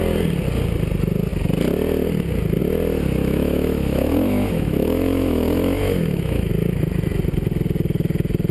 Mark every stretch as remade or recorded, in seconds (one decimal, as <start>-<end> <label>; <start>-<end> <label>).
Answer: 0.0-3.2 recorded; 3.2-6.5 remade; 6.5-8.5 recorded